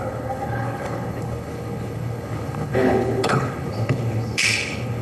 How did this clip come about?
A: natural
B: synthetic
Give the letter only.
B